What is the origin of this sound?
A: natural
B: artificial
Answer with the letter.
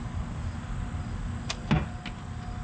A